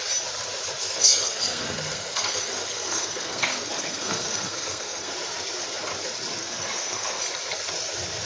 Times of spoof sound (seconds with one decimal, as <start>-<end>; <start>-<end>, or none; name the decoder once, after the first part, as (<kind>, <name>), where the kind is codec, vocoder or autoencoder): 0.8-5.1 (codec, SNAC); 6.4-7.2